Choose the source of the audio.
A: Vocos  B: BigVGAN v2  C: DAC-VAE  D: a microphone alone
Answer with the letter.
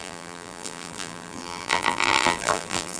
B